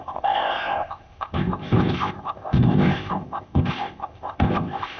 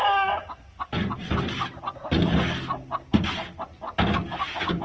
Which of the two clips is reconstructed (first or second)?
first